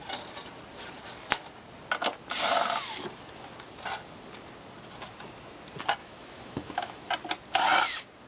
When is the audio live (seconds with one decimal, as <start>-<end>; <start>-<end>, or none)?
0.0-6.0; 7.1-8.3